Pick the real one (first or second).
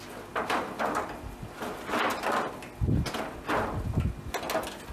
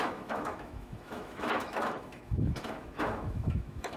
first